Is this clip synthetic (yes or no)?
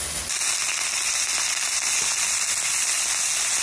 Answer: no